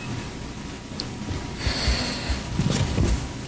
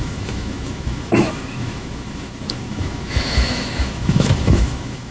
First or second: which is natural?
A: first